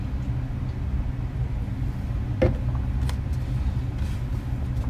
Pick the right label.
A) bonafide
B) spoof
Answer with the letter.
A